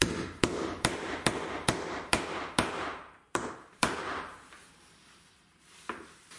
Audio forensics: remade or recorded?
remade